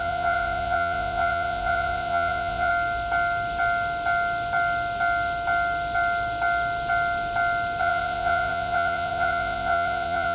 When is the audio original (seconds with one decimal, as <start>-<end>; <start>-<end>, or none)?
2.7-7.8